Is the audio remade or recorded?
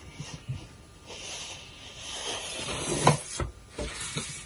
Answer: recorded